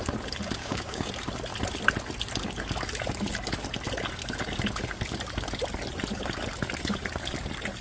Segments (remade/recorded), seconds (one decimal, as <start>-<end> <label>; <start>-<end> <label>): 0.0-0.6 recorded; 0.6-1.1 remade; 1.1-7.8 recorded